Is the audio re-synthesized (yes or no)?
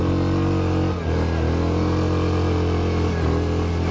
no